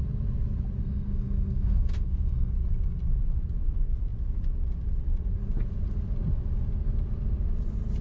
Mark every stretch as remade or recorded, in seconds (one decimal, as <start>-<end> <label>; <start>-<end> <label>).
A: 0.0-0.8 recorded; 0.8-2.5 remade; 2.5-8.0 recorded